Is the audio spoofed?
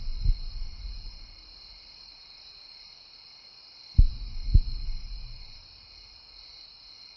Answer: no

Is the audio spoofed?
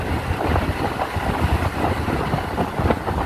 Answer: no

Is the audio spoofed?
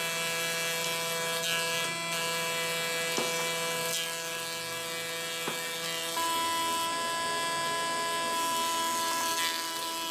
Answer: no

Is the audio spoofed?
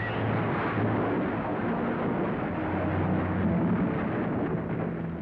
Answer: no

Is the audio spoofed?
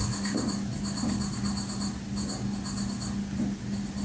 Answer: no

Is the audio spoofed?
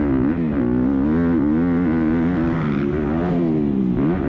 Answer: no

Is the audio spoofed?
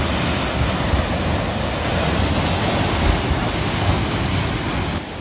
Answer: no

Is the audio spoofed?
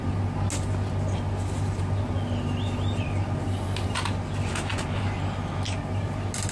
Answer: no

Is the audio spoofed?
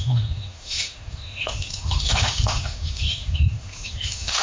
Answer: yes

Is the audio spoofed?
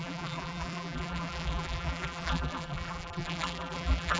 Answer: yes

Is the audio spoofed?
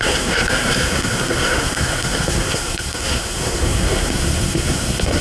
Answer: yes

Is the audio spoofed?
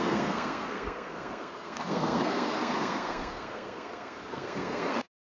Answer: yes